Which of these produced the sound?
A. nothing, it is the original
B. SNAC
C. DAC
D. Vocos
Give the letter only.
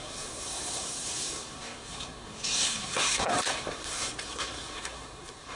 B